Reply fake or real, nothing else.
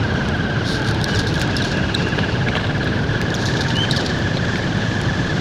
fake